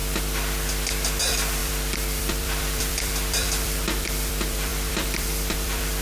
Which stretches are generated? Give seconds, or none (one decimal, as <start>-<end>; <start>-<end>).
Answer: 1.2-6.0